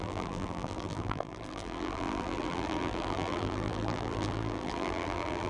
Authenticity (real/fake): fake